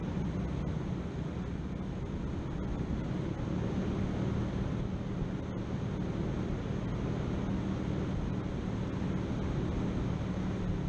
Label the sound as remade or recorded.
recorded